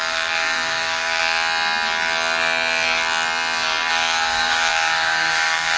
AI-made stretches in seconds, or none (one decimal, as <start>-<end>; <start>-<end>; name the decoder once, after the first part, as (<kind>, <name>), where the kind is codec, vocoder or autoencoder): 0.0-1.2 (codec, DAC); 3.9-5.8